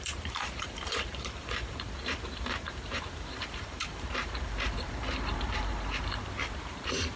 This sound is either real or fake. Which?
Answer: fake